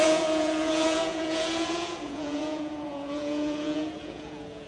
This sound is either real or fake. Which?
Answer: fake